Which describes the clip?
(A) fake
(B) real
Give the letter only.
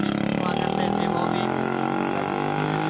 B